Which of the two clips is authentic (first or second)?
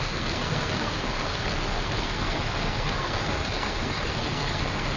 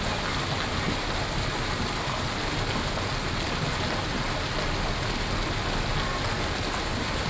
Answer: second